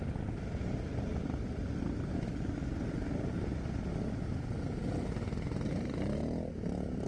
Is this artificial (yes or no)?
no